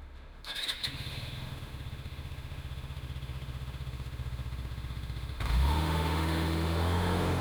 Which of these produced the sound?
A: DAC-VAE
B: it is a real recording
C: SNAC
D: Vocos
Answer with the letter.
A